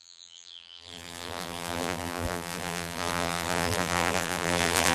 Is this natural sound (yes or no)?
no